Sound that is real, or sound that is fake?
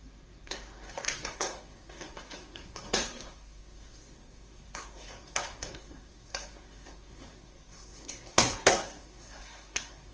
fake